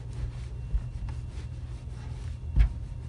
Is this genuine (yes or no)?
yes